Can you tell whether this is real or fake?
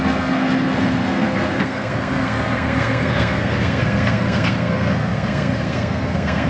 fake